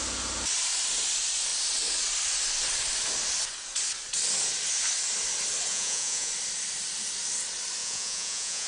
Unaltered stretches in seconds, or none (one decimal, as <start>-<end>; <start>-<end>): 0.0-5.7; 6.3-7.8

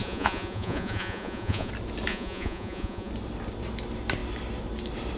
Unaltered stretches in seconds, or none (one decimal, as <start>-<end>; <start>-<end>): 1.7-2.1; 3.1-5.2

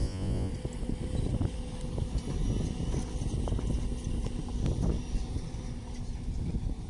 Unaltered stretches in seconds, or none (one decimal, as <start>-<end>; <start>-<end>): 0.5-6.9

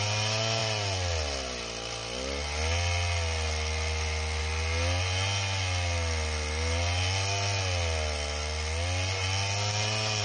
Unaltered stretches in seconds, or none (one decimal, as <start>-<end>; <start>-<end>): 0.0-10.2

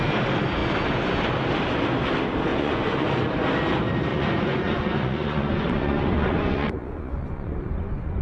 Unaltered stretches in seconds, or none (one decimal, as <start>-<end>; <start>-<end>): 0.0-2.5; 3.3-4.1

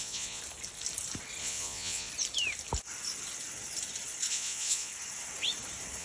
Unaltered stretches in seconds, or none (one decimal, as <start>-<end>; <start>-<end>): 0.4-1.4; 2.1-4.3; 4.9-6.0

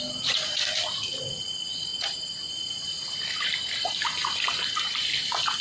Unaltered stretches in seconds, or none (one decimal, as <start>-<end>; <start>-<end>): 0.0-5.6